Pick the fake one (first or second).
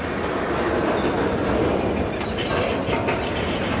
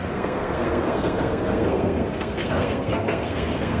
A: second